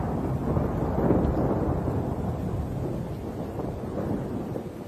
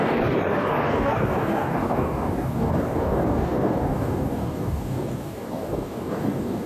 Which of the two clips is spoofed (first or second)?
second